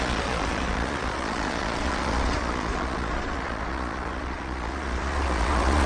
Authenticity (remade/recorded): remade